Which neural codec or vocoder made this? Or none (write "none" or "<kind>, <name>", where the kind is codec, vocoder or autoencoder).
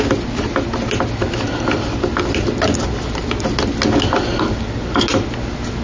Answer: none